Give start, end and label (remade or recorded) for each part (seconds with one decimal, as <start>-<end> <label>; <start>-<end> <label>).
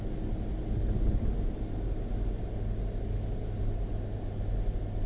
0.0-5.1 recorded